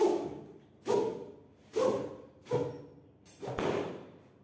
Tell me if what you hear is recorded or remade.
recorded